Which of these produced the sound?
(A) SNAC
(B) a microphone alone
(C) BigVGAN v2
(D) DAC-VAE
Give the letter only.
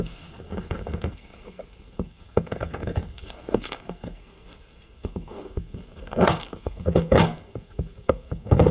A